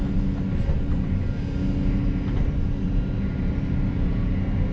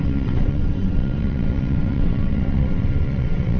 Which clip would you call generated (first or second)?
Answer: second